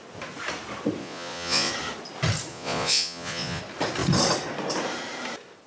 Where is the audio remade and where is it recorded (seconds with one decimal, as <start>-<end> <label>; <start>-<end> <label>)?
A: 0.0-1.0 recorded; 1.0-1.7 remade; 1.7-2.5 recorded; 2.5-3.6 remade; 3.6-5.7 recorded